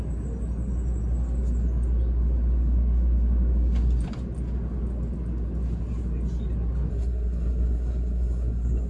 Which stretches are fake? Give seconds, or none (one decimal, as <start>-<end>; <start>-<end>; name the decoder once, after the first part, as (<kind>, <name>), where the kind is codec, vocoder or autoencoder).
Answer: 6.9-8.9 (codec, SNAC)